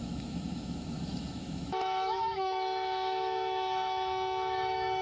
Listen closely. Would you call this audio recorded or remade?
remade